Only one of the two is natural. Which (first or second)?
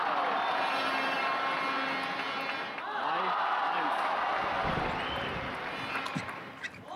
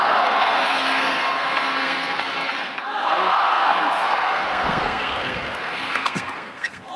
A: first